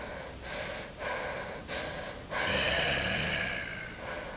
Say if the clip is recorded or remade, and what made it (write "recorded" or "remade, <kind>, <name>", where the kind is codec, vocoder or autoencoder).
recorded